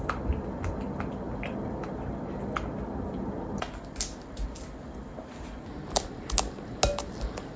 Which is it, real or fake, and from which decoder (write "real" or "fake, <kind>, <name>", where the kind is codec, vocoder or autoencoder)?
real